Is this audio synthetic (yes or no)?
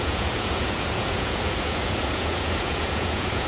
yes